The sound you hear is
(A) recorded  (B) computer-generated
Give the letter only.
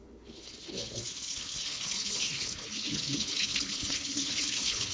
B